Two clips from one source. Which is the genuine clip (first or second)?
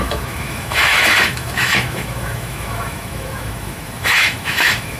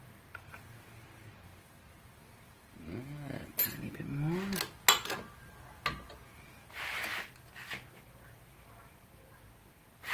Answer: second